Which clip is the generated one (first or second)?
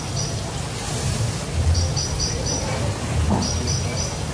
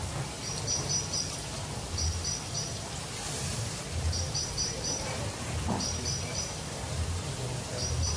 second